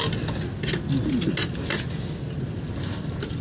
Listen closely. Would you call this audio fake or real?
real